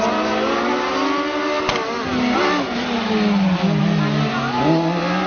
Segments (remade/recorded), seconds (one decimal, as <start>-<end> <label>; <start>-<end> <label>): 0.0-5.3 recorded